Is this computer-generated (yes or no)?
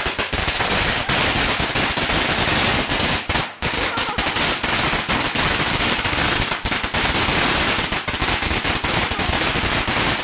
no